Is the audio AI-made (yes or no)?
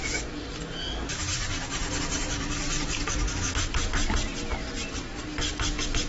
no